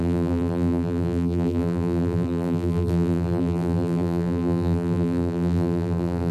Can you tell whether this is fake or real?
fake